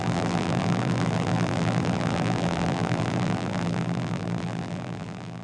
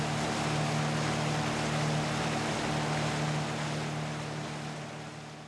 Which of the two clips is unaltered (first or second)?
second